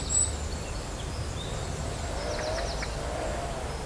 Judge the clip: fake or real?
real